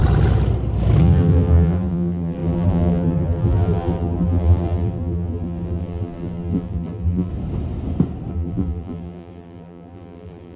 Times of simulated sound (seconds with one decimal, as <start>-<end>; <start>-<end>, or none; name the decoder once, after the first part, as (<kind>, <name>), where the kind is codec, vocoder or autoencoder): 1.0-7.3 (vocoder, BigVGAN v2); 8.3-10.6